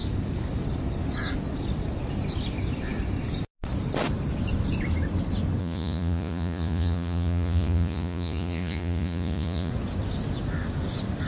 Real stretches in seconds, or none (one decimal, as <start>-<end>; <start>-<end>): 0.0-5.6; 9.7-11.3